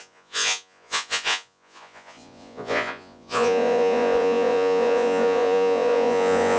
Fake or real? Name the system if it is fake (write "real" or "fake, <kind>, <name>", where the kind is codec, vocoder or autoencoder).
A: fake, vocoder, Vocos